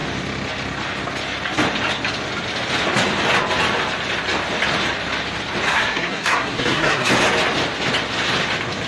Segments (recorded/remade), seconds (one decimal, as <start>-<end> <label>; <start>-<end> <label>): 0.0-5.7 recorded; 5.7-7.1 remade; 7.1-8.9 recorded

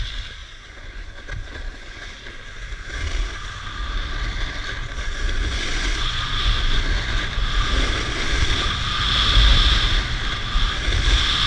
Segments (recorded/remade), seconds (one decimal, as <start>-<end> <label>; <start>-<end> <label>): 0.0-0.4 recorded; 0.4-3.0 remade; 3.0-4.8 recorded; 4.8-7.2 remade; 7.2-11.5 recorded

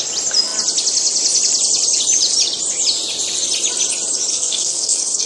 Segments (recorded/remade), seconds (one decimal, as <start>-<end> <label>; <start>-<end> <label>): 0.0-4.3 recorded; 4.3-5.3 remade

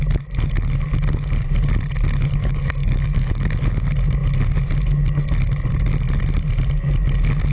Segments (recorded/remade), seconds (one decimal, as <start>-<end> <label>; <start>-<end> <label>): 0.0-2.4 recorded; 2.4-3.3 remade; 3.3-7.5 recorded

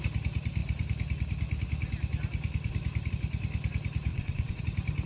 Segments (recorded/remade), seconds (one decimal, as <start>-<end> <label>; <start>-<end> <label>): 0.0-4.1 recorded; 4.1-4.6 remade; 4.6-5.1 recorded

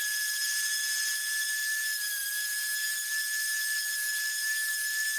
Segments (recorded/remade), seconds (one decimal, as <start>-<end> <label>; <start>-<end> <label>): 0.0-5.2 recorded